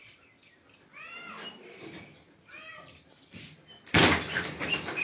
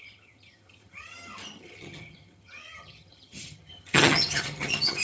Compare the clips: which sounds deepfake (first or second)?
second